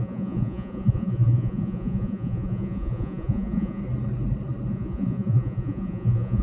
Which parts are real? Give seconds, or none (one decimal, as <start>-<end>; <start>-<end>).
3.8-4.7